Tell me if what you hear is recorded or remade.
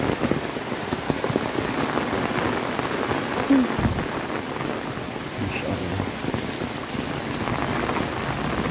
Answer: recorded